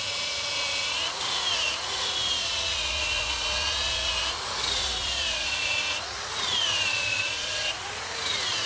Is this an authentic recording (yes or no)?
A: no